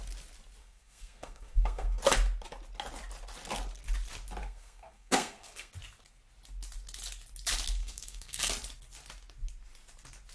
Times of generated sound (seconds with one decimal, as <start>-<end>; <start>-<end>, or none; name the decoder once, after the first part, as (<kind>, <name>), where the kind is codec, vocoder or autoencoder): 0.6-2.0 (codec, SNAC); 4.4-5.7; 7.8-8.5